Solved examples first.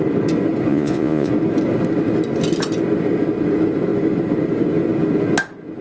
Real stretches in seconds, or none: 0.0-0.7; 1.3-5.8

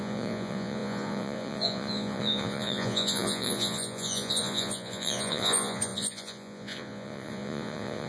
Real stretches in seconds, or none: none

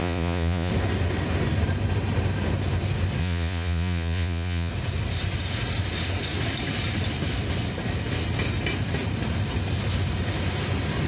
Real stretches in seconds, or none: 0.7-3.2; 4.7-11.1

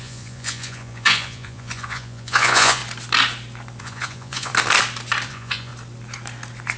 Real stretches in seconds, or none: 2.8-3.8; 4.5-5.3; 5.7-6.8